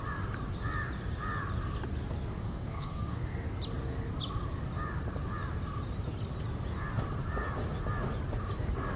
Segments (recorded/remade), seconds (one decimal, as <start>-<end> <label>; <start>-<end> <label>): 0.0-2.4 recorded; 2.4-3.2 remade; 3.2-9.0 recorded